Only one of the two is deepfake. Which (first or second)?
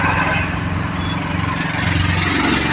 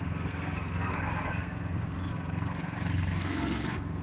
second